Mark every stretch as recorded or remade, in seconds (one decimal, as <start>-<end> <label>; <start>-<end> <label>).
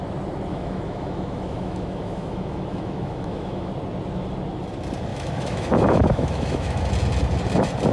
0.0-0.5 recorded; 0.5-3.7 remade; 3.7-5.1 recorded; 5.1-6.8 remade; 6.8-7.9 recorded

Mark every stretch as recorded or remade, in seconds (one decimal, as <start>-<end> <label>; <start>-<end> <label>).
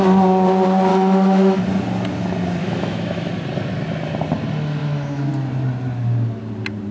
0.0-0.9 recorded; 0.9-1.6 remade; 1.6-2.6 recorded; 2.6-3.3 remade; 3.3-4.8 recorded; 4.8-5.3 remade; 5.3-6.9 recorded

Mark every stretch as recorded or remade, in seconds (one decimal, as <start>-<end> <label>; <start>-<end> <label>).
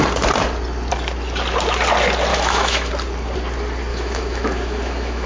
0.0-2.3 recorded; 2.3-2.9 remade; 2.9-3.9 recorded; 3.9-5.3 remade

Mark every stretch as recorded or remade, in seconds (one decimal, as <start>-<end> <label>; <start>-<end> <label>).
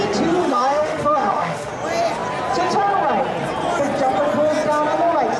0.0-0.4 recorded; 0.4-1.7 remade; 1.7-5.4 recorded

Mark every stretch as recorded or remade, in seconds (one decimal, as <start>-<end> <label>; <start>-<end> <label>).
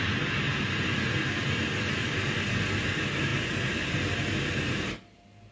0.0-5.5 recorded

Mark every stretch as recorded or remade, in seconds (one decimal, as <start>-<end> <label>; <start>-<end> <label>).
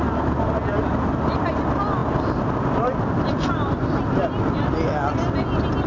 0.0-5.9 recorded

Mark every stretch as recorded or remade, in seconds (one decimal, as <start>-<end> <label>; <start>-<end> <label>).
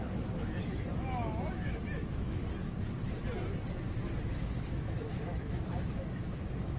0.0-2.4 remade; 2.4-4.3 recorded; 4.3-6.8 remade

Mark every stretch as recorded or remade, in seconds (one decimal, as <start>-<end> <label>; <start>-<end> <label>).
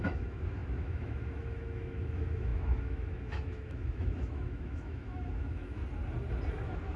0.0-5.8 remade; 5.8-6.5 recorded; 6.5-7.0 remade